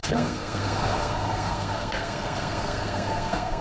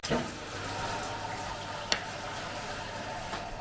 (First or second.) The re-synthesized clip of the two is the first